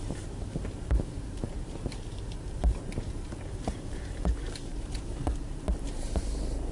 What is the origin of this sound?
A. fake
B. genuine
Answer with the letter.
A